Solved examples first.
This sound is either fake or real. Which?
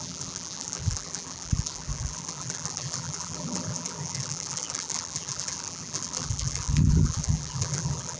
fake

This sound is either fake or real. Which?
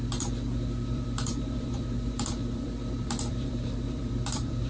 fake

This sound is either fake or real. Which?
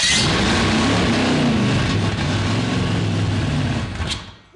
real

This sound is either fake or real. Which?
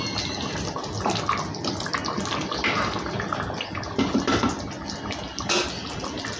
real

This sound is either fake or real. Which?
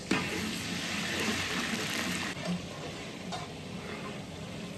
real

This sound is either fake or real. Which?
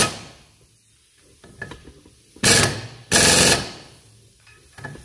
real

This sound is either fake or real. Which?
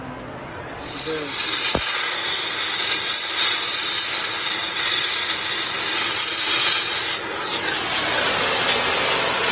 real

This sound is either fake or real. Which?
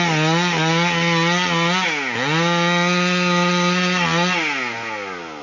real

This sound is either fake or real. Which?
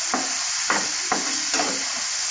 real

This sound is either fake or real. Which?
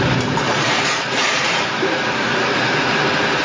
fake